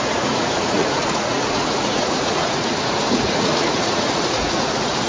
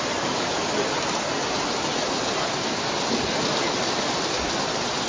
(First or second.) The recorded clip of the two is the second